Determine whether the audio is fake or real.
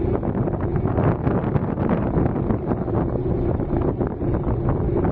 real